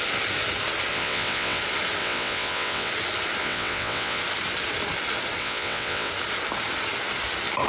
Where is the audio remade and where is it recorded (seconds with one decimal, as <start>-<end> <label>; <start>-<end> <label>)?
0.0-0.9 recorded; 0.9-1.6 remade; 1.6-2.0 recorded; 2.0-2.9 remade; 2.9-3.4 recorded; 3.4-4.2 remade; 4.2-5.4 recorded; 5.4-6.1 remade; 6.1-7.7 recorded